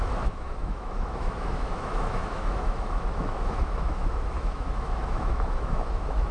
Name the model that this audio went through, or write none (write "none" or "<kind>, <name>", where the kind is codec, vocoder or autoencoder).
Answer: autoencoder, DAC-VAE